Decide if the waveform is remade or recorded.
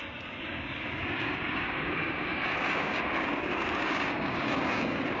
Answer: remade